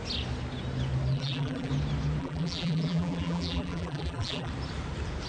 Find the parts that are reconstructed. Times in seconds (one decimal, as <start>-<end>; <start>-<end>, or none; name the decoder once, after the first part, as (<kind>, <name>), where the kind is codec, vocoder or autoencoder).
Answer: 1.1-1.7 (vocoder, BigVGAN v2); 2.2-4.5